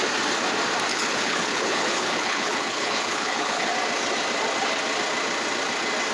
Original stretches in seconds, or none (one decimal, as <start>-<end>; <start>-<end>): 0.0-0.9; 3.7-6.1